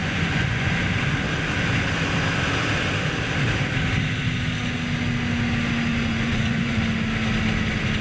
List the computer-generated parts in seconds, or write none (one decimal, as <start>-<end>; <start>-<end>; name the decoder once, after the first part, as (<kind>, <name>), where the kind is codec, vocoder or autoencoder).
0.0-0.8 (vocoder, Vocos); 5.9-6.8